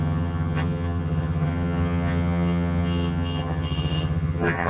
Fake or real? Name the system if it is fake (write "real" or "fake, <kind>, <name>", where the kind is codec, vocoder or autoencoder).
fake, vocoder, HiFi-GAN